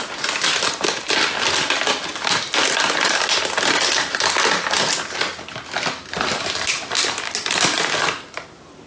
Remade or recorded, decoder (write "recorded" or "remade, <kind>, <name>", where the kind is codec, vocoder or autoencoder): recorded